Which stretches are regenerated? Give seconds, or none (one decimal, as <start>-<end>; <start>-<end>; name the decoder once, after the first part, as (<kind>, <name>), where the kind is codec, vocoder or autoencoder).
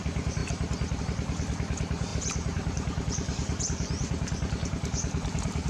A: 0.0-0.4 (vocoder, BigVGAN v2); 1.0-5.7